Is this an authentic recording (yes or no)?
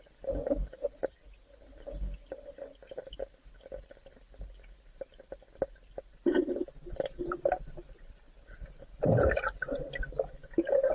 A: yes